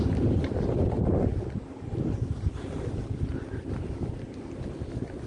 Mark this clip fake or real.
real